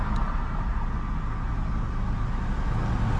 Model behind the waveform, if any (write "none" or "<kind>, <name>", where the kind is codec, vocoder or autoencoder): none